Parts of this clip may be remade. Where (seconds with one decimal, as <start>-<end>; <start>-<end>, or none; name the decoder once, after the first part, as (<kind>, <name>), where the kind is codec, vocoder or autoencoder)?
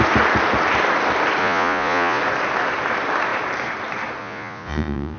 1.4-2.2 (vocoder, Vocos); 4.2-5.2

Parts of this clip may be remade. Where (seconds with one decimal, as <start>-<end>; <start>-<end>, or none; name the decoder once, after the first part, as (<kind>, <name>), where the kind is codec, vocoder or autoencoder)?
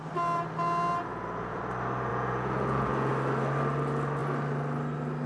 1.1-1.6 (vocoder, Vocos); 2.1-3.1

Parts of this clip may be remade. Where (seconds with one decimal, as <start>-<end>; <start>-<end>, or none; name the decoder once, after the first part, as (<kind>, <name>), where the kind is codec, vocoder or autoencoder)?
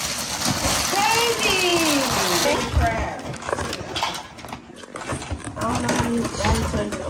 none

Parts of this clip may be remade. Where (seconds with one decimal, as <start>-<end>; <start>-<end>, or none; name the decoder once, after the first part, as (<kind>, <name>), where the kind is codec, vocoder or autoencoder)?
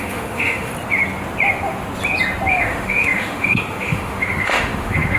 0.0-0.7 (autoencoder, DAC-VAE); 2.5-5.2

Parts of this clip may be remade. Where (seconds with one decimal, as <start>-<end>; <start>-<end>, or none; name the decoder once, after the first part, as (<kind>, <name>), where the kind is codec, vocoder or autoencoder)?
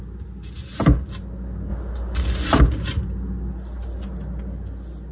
none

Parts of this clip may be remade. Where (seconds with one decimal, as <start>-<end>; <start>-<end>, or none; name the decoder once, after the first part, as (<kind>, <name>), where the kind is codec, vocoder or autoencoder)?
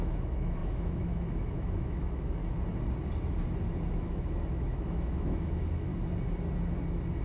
0.0-2.4 (autoencoder, DAC-VAE); 3.9-5.9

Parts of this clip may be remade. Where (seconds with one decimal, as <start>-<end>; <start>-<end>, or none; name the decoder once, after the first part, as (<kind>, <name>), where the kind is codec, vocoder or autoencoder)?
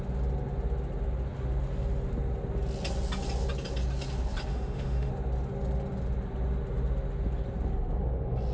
4.5-5.1 (autoencoder, DAC-VAE)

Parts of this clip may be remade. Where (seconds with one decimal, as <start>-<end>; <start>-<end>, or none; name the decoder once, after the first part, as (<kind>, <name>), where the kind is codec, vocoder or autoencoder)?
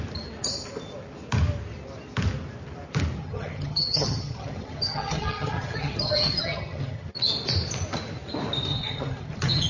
3.2-7.1 (vocoder, HiFi-GAN); 8.7-9.7